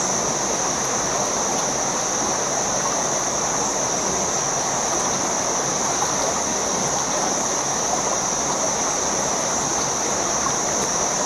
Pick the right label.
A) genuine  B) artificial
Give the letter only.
A